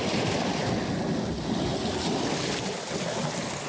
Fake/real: real